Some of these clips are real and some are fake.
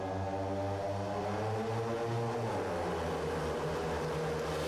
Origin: real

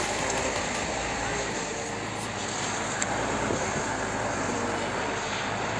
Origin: real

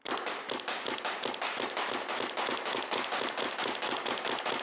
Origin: real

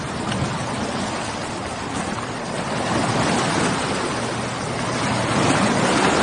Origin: real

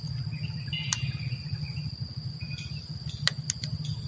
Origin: real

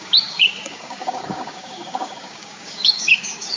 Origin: fake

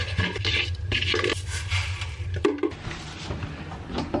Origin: real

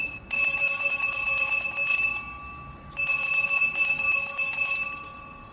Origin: real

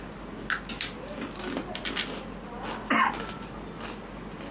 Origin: real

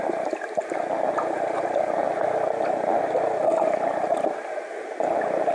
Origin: real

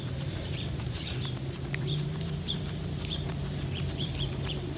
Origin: fake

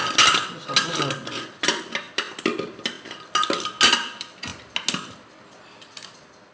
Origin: real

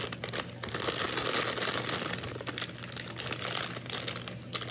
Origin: real